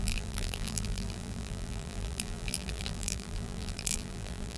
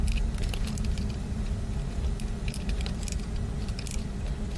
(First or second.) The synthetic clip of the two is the first